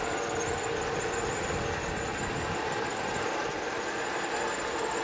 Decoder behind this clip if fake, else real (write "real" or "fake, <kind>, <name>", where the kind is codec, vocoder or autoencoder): real